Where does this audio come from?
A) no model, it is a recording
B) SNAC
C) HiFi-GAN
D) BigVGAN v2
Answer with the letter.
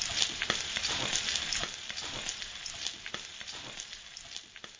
D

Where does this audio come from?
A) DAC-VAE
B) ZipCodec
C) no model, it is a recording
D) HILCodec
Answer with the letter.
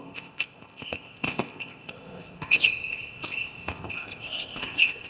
B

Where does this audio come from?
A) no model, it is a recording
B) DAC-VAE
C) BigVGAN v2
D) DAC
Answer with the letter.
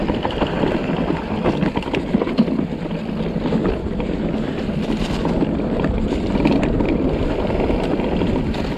A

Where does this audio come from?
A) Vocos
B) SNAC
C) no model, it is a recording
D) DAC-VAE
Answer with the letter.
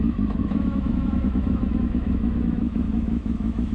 D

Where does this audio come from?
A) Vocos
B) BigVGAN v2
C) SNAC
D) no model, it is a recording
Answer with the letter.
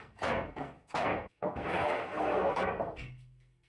C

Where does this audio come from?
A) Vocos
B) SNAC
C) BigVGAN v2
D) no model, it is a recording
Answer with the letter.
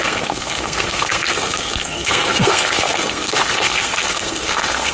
B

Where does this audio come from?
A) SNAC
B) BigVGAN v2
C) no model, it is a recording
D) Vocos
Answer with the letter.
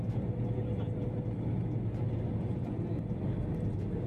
C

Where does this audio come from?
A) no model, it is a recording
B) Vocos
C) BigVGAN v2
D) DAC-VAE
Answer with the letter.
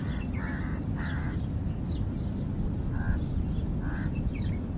A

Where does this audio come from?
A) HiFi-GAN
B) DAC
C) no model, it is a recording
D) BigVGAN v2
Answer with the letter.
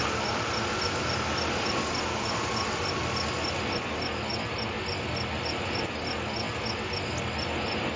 C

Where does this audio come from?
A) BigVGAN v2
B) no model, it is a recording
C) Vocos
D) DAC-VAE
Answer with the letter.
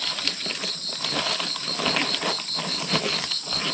B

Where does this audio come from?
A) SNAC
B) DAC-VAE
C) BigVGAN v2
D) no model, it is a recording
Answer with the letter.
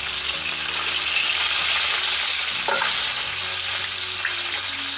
D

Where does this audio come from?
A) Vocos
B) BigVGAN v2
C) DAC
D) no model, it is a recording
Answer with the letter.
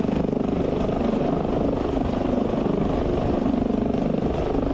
D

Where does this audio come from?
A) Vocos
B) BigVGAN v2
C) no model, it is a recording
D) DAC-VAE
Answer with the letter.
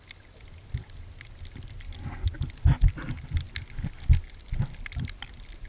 C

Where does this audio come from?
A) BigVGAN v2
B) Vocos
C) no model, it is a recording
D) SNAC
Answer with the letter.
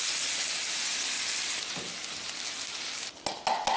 C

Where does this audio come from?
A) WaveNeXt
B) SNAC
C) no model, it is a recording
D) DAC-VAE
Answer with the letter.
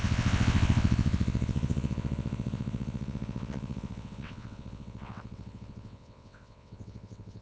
A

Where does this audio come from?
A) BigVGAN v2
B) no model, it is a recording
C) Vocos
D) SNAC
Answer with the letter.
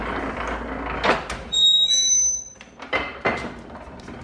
B